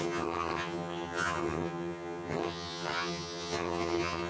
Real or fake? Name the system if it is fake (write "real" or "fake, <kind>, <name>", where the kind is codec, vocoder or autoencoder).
fake, vocoder, HiFi-GAN